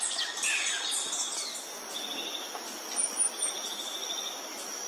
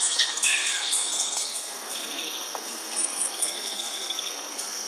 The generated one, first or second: second